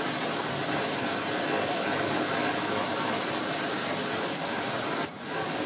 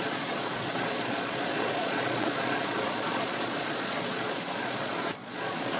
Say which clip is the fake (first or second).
second